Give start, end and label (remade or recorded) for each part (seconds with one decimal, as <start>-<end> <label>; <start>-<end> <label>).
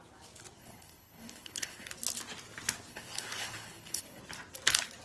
0.0-0.6 recorded; 0.6-1.9 remade; 1.9-2.9 recorded; 2.9-4.2 remade; 4.2-5.0 recorded